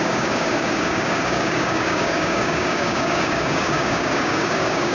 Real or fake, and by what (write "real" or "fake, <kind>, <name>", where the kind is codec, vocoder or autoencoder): fake, codec, DAC